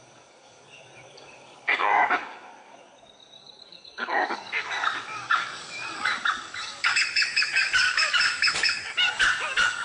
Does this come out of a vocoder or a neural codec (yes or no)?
yes